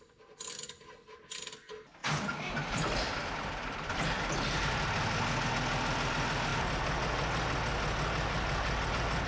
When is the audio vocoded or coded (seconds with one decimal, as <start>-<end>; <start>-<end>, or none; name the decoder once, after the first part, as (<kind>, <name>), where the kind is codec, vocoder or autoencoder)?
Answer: 2.0-4.2 (vocoder, BigVGAN v2)

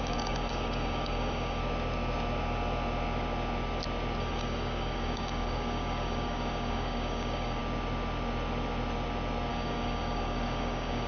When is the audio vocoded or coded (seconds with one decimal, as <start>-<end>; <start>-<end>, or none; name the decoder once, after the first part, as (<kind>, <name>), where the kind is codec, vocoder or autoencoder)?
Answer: 0.0-1.6 (codec, DAC); 4.2-7.6; 9.5-11.1

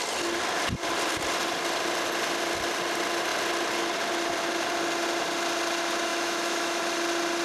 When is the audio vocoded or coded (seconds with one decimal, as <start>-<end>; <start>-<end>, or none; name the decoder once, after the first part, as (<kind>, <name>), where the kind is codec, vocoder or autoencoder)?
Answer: 6.1-6.8 (autoencoder, DAC-VAE)

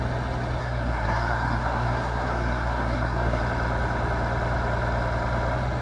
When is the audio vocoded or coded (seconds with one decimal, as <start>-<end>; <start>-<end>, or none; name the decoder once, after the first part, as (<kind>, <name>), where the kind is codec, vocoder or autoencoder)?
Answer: 0.6-3.4 (codec, SNAC)

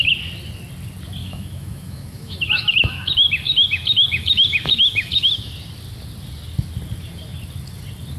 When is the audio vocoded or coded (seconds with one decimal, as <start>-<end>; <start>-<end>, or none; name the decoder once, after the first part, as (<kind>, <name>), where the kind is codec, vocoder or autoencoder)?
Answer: 1.2-5.5 (autoencoder, DAC-VAE)

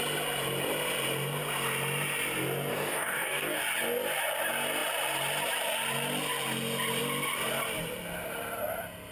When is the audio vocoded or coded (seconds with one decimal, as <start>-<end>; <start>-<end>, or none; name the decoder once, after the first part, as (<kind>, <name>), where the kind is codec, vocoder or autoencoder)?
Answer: 2.7-3.6 (codec, DAC)